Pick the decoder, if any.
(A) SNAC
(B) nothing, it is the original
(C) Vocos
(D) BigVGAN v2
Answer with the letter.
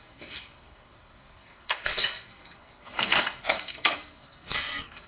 A